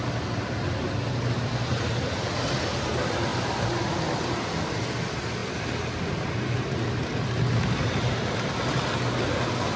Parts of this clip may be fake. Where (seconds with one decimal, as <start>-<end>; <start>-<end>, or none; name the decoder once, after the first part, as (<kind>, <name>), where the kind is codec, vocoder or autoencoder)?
none